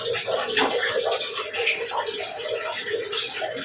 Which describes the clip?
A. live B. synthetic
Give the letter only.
A